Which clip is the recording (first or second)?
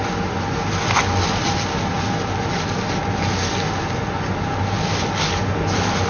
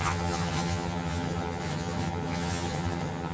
first